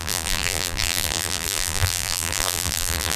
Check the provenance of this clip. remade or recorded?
remade